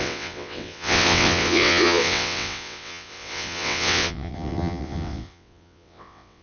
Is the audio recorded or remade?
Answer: remade